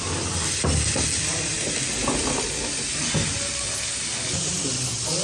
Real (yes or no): yes